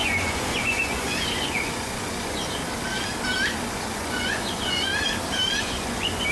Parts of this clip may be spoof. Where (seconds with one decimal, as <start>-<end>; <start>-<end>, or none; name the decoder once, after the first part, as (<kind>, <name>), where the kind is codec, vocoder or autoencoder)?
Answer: 0.0-2.6 (vocoder, Vocos); 3.7-4.9; 5.6-6.3

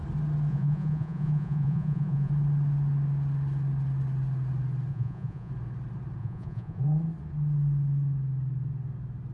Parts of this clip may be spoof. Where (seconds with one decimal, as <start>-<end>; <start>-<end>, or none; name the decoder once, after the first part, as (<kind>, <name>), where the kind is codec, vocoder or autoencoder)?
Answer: 0.5-2.3 (vocoder, Vocos); 4.9-5.5; 6.2-6.8

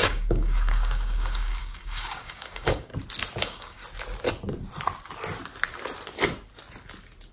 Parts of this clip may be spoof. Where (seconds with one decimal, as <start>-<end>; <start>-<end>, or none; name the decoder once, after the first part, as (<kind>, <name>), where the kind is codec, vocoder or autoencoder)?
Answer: 0.0-2.9 (codec, DAC); 3.4-3.8

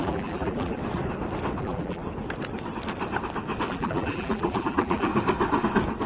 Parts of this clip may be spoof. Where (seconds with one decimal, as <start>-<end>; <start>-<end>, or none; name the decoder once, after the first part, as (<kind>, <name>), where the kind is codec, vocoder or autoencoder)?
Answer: 0.0-0.8 (vocoder, BigVGAN v2); 1.6-2.0; 3.7-5.1